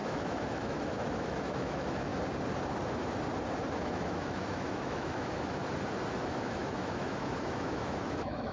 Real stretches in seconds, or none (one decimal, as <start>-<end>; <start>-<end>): 2.1-3.7; 5.6-6.2

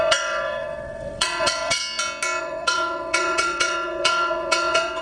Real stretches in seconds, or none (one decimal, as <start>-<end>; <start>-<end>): 1.8-2.4

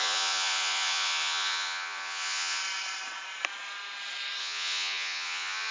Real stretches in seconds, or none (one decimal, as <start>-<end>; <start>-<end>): 2.6-4.4